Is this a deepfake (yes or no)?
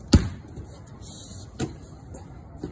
no